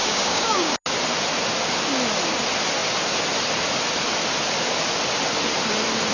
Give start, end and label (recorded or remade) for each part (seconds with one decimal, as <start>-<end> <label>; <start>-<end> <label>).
0.0-0.7 remade; 0.7-6.1 recorded